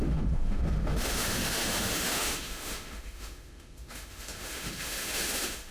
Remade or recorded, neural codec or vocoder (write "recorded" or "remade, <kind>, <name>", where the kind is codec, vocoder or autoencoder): remade, autoencoder, DAC-VAE